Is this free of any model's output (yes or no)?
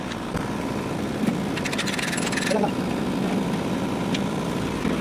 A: no